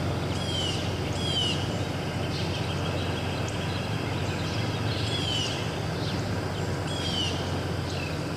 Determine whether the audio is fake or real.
real